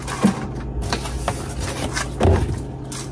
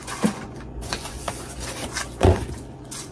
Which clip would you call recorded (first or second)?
first